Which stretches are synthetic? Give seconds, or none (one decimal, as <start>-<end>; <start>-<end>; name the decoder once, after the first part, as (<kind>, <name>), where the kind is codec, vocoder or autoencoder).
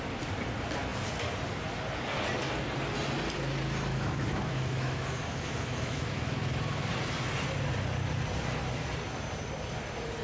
3.9-6.9 (autoencoder, DAC-VAE)